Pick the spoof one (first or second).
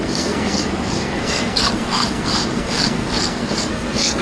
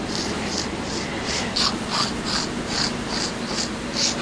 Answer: first